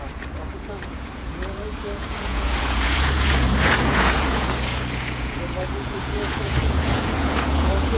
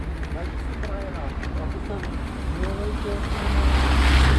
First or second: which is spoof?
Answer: first